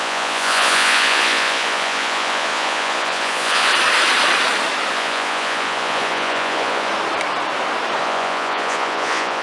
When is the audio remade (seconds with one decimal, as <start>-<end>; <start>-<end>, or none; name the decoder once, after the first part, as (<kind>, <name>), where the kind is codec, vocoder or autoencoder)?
0.0-3.7 (vocoder, Vocos); 4.9-6.9; 8.0-9.4